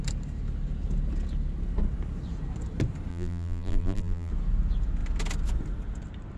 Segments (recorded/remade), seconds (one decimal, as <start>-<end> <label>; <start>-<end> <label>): 0.0-3.1 recorded; 3.1-4.3 remade; 4.3-6.4 recorded